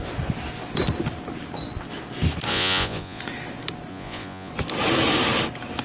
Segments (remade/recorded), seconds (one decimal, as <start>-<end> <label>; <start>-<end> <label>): 0.0-2.5 recorded; 2.5-3.2 remade; 3.2-3.9 recorded; 3.9-4.5 remade; 4.5-5.8 recorded